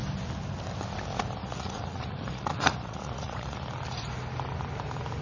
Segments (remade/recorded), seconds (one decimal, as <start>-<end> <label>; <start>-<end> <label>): 0.0-1.4 recorded; 1.4-3.6 remade; 3.6-5.2 recorded